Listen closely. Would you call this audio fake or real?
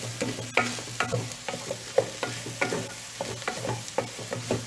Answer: real